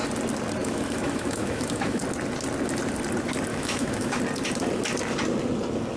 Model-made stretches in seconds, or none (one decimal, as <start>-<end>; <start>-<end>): 0.6-2.0; 3.5-4.2